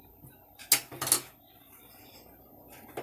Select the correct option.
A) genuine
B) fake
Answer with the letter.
A